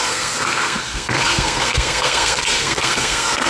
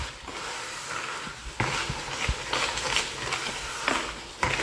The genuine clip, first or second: second